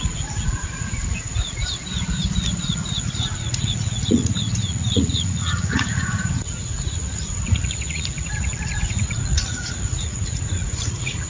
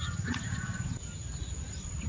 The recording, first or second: second